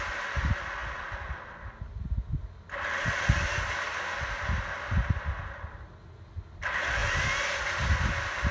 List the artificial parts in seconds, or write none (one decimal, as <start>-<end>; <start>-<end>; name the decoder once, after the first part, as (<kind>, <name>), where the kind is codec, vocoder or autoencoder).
none